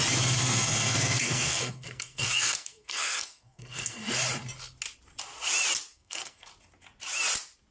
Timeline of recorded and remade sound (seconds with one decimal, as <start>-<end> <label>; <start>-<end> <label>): 0.0-0.4 recorded; 0.4-4.0 remade; 4.0-5.9 recorded; 5.9-6.5 remade; 6.5-7.7 recorded